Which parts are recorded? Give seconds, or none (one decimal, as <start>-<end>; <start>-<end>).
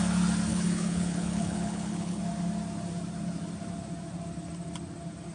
0.0-0.5; 2.2-5.3